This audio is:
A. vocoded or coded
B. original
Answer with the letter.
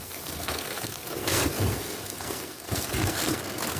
A